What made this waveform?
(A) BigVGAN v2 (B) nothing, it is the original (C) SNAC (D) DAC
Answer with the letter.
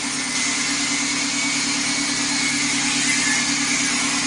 B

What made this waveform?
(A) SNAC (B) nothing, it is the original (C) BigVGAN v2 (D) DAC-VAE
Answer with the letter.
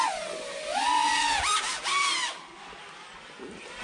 B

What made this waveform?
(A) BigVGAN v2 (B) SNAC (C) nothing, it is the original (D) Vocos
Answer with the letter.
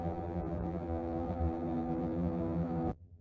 A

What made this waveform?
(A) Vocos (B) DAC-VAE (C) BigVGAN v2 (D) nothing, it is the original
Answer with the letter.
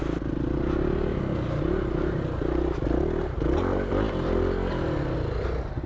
D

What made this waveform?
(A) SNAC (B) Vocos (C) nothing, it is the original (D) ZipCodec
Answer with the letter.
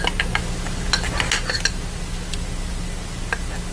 C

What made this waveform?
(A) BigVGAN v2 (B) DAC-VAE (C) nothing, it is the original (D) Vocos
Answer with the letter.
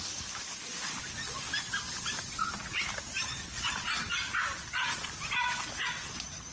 C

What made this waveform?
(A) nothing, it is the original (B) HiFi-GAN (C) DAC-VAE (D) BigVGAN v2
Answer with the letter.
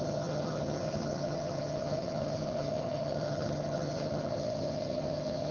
B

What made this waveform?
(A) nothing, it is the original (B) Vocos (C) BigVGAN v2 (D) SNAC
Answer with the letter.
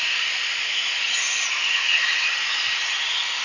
A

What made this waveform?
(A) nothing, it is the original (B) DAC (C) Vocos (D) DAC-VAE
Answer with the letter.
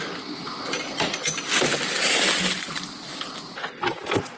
A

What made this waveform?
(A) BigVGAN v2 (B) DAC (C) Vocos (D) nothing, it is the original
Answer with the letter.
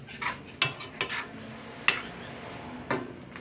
D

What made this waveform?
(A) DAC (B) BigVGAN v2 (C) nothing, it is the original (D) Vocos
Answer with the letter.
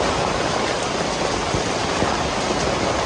C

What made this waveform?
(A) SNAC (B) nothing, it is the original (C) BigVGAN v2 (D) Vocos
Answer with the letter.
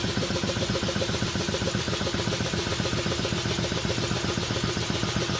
B